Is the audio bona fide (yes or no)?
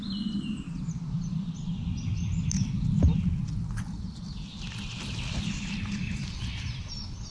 yes